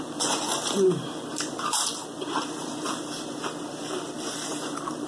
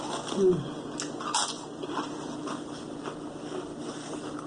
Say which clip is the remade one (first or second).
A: first